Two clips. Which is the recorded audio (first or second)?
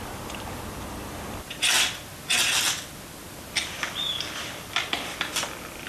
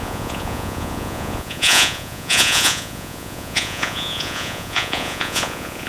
first